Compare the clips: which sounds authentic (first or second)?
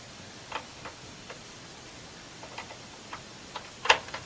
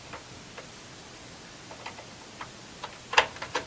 second